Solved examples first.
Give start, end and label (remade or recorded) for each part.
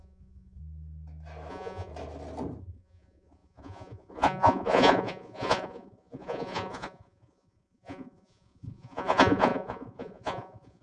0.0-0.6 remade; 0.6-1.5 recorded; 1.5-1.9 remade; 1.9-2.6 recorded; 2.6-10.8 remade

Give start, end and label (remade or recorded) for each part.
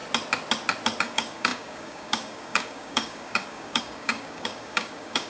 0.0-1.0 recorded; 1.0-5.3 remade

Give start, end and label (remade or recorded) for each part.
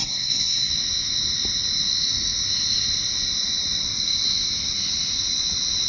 0.0-0.7 remade; 0.7-5.9 recorded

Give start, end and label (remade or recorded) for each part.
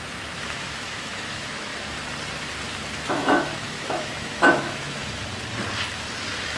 0.0-1.7 remade; 1.7-3.1 recorded; 3.1-5.2 remade; 5.2-6.6 recorded